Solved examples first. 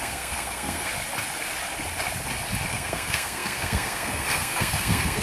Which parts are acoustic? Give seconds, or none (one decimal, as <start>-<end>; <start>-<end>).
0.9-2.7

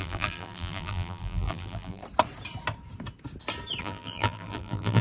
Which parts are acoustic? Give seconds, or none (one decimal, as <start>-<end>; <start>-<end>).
2.0-3.8

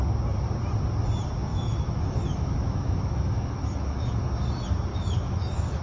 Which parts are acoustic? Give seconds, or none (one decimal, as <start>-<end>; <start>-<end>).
0.0-1.5; 4.2-4.9

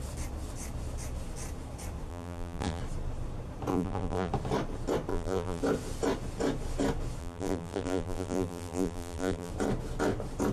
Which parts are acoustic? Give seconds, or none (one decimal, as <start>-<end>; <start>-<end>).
0.0-2.1; 2.8-3.7; 4.3-5.1; 5.6-7.2; 9.5-10.5

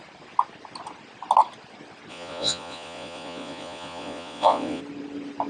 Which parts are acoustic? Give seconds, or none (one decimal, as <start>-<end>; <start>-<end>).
0.0-2.1; 4.8-5.5